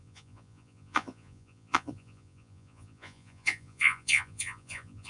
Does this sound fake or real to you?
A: fake